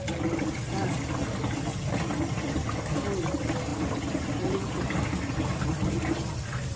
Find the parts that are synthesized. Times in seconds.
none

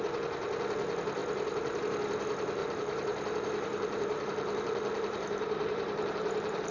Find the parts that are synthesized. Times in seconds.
2.6-6.7

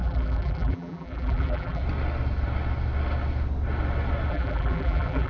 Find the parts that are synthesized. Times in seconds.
0.0-1.8; 4.3-5.3

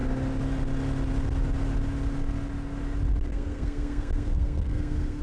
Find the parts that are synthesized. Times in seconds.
3.3-5.2